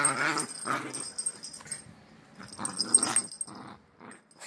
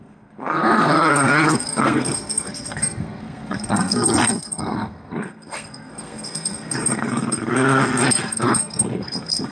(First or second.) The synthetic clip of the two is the second